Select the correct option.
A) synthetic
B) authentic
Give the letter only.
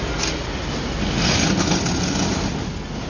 B